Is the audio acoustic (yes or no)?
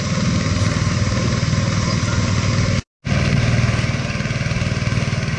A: yes